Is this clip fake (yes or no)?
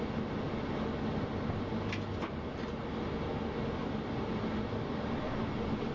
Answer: no